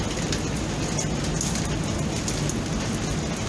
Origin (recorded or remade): recorded